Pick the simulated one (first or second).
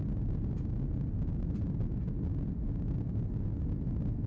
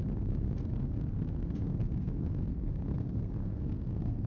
second